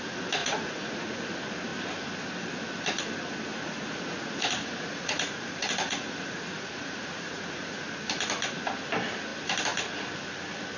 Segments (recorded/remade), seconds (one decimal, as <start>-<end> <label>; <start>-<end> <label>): 0.0-0.4 recorded; 0.4-1.2 remade; 1.2-3.5 recorded; 3.5-7.8 remade; 7.8-10.8 recorded